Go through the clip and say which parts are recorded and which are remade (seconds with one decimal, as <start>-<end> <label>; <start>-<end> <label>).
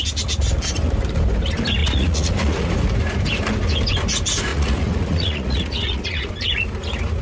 0.0-1.8 recorded; 1.8-2.7 remade; 2.7-4.5 recorded; 4.5-6.3 remade; 6.3-7.2 recorded